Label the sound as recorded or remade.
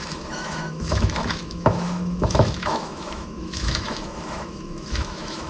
remade